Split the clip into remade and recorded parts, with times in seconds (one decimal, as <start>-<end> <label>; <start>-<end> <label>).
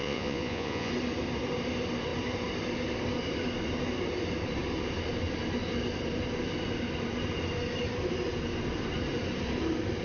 0.0-0.9 remade; 0.9-10.0 recorded